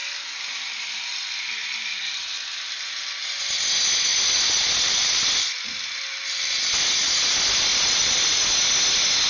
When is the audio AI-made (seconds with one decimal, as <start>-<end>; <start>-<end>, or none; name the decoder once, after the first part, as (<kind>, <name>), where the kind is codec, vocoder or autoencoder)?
4.1-5.8 (vocoder, BigVGAN v2); 7.7-8.4